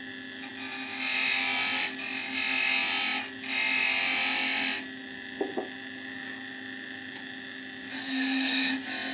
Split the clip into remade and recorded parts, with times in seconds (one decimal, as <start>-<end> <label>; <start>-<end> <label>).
0.0-8.0 recorded; 8.0-8.7 remade; 8.7-9.1 recorded